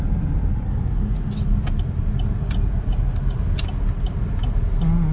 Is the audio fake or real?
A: real